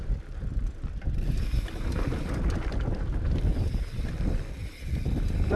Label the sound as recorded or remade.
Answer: remade